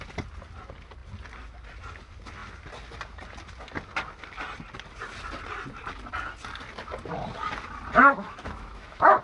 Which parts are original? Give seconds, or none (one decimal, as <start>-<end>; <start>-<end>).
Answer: 0.0-8.0